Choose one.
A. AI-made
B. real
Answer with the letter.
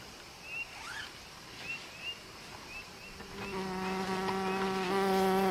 B